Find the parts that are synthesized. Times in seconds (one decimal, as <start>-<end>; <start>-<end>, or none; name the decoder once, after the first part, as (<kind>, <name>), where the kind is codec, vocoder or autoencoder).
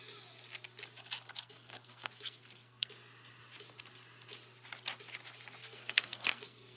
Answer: 1.3-2.9 (codec, SNAC); 5.6-6.8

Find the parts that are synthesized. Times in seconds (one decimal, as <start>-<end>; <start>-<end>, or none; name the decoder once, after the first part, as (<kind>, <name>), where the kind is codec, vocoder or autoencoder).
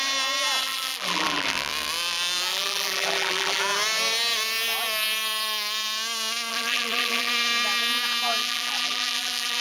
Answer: 0.6-1.7 (vocoder, BigVGAN v2); 2.5-3.6; 6.5-7.3; 8.4-9.6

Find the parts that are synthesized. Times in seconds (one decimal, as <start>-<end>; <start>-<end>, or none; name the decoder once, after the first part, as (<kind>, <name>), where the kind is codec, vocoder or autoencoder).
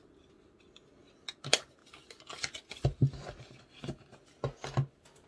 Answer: none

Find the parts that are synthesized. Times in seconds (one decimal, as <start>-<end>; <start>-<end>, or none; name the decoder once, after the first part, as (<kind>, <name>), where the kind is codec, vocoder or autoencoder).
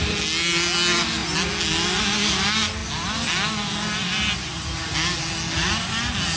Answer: none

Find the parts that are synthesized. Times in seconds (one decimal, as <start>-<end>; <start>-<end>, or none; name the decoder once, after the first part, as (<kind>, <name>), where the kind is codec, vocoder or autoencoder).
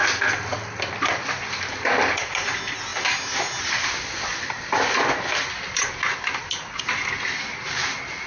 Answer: none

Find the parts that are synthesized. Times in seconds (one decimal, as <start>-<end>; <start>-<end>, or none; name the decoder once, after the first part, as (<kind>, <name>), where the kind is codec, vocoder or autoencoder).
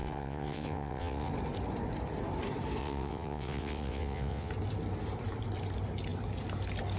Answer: 0.0-1.3 (vocoder, WaveNeXt); 2.8-4.5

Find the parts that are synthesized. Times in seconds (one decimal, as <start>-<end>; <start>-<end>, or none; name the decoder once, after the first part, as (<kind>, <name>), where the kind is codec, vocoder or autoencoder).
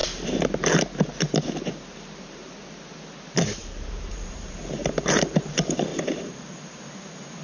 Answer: 3.6-5.3 (vocoder, BigVGAN v2); 5.9-6.8